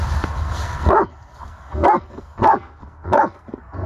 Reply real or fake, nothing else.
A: fake